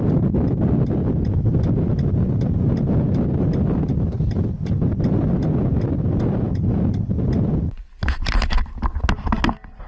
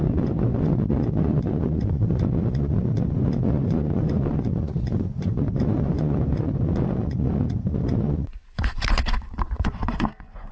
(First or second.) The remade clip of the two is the second